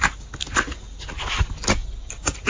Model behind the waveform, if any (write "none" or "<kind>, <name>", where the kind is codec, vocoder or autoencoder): none